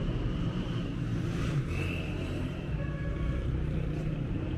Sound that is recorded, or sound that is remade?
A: remade